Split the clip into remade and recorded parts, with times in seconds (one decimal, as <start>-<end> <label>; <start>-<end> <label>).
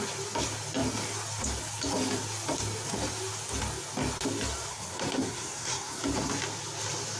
0.0-4.7 recorded; 4.7-6.0 remade; 6.0-7.2 recorded